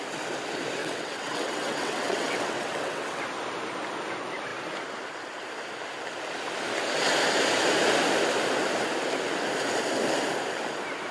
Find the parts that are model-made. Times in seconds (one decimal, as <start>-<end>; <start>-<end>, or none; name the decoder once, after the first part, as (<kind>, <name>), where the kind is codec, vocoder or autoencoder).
0.8-3.2 (vocoder, WaveNeXt)